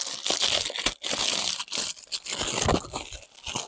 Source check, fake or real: real